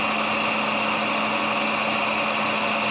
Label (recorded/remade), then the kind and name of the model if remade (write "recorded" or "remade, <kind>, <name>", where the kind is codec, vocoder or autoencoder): recorded